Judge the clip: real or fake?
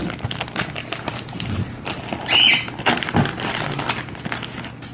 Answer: real